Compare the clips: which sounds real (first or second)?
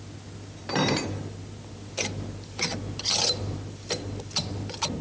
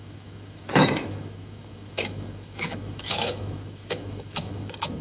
first